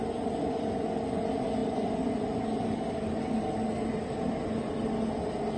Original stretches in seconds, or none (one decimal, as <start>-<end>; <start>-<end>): 0.0-5.6